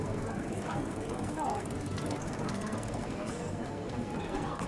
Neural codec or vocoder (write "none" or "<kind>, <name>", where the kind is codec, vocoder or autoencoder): codec, SNAC